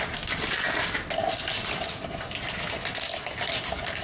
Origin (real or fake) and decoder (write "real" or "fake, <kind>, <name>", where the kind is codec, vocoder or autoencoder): real